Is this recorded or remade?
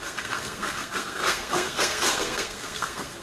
remade